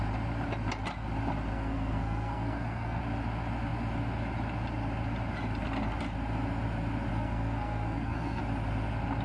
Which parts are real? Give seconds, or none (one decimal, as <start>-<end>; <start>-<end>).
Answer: 0.0-1.5; 3.0-7.1; 8.4-9.2